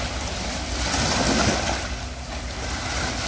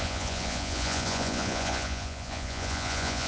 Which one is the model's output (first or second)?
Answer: second